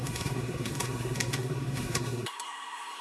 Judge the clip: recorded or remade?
remade